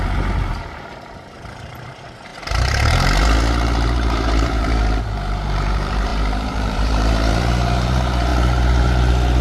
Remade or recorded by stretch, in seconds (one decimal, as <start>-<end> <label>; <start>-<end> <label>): 0.0-9.4 remade